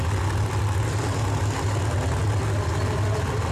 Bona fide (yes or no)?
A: yes